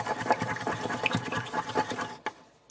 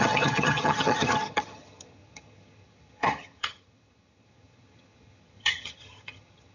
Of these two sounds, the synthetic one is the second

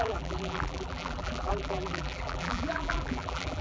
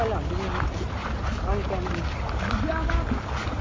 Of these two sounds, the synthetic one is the first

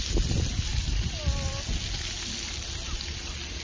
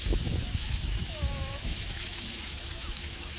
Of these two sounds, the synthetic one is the second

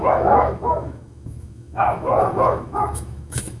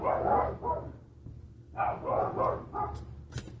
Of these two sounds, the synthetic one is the first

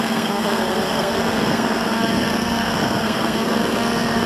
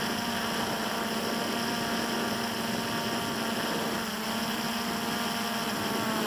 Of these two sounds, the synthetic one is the first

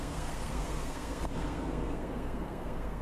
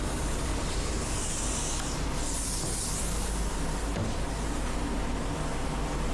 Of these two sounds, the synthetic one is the first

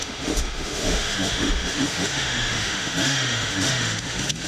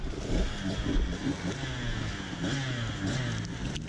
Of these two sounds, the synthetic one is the first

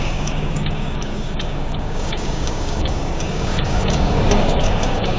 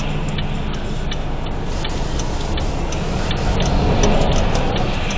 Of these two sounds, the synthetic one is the first